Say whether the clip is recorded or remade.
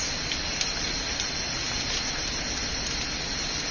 recorded